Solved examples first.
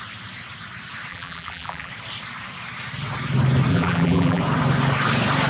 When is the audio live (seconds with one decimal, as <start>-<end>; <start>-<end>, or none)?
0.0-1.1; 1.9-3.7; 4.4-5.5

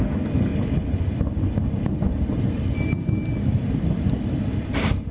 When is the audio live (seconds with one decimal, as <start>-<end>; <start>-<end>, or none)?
0.0-5.1

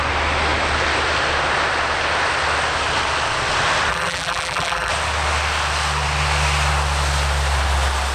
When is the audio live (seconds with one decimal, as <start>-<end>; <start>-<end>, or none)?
0.0-3.9; 4.9-8.1

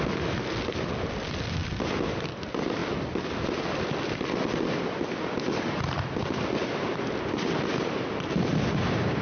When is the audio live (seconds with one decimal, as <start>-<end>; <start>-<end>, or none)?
0.0-9.2

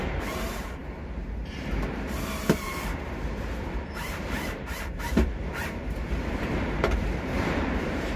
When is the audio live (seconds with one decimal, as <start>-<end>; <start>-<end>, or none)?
none

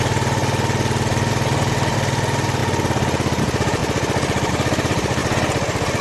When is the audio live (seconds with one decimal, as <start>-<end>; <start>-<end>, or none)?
0.4-1.3; 2.6-3.4; 3.8-4.5; 5.2-6.0

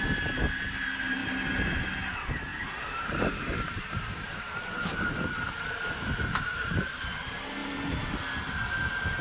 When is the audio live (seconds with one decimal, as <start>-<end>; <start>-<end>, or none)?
0.0-2.5; 6.8-9.2

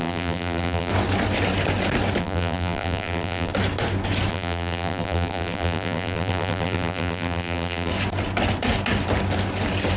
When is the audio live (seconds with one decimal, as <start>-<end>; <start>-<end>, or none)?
0.9-2.2; 3.5-4.3; 7.9-10.0